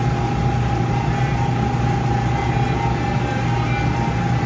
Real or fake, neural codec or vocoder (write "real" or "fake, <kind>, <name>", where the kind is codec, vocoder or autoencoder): real